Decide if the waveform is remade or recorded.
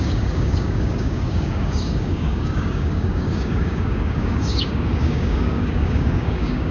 remade